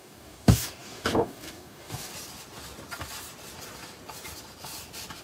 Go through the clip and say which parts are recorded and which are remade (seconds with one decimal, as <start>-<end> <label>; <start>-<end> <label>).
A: 0.0-2.1 remade; 2.1-5.2 recorded